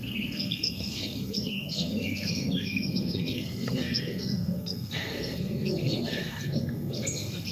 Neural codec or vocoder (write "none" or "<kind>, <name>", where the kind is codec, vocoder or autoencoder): codec, SNAC